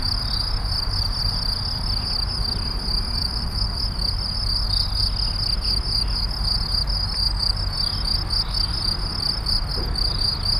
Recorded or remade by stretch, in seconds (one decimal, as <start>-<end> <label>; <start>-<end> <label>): 0.0-3.2 recorded; 3.2-3.8 remade; 3.8-10.6 recorded